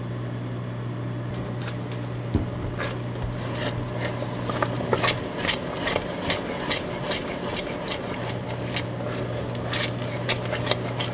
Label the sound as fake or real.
real